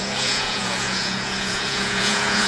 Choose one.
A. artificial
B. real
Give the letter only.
A